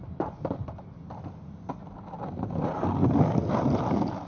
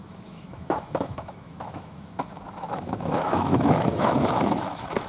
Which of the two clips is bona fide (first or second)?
first